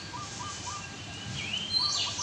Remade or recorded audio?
remade